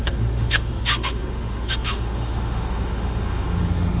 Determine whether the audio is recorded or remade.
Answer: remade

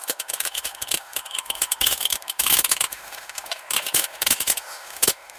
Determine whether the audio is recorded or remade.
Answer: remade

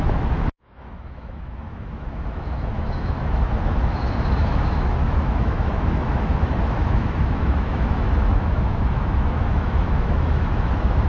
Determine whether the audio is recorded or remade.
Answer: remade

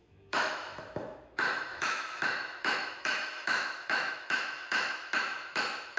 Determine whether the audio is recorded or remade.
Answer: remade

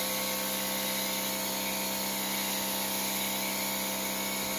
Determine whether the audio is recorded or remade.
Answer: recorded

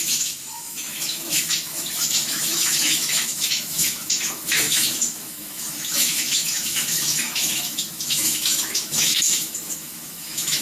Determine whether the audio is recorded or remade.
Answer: remade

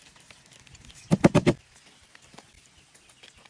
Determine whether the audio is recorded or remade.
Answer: recorded